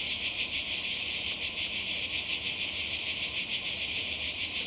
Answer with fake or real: real